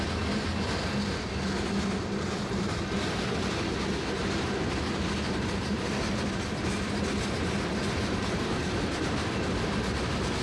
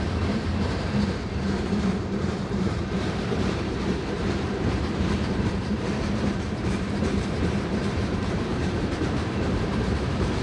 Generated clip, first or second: second